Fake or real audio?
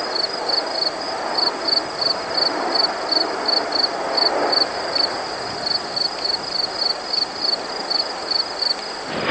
real